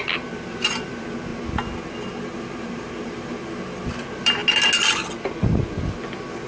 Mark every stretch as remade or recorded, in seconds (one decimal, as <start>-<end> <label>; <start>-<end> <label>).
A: 0.0-1.3 remade; 1.3-2.1 recorded; 2.1-4.4 remade; 4.4-6.5 recorded